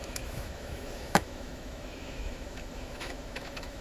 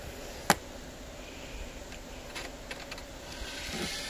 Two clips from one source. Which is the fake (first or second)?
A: first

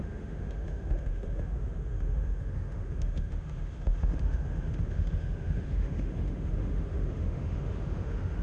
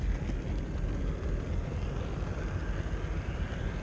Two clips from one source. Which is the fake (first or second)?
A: first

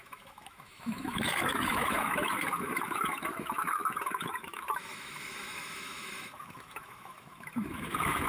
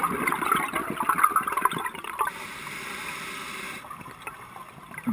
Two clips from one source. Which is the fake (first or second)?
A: first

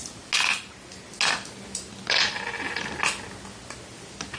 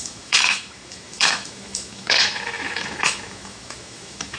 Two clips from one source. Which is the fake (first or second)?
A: second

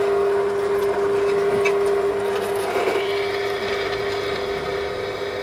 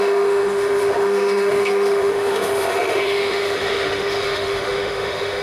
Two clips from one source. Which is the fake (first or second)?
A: second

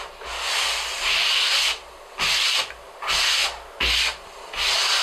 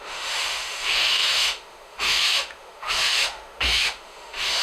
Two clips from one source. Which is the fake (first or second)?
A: second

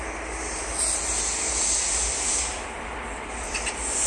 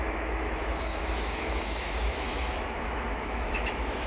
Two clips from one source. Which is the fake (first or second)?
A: second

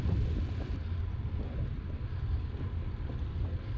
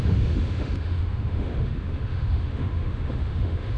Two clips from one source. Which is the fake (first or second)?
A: second